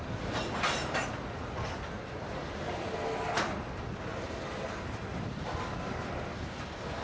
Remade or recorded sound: recorded